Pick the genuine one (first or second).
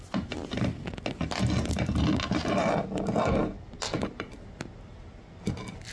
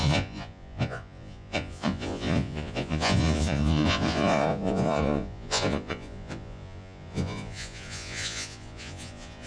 first